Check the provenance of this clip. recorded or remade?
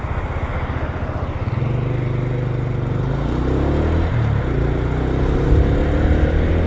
recorded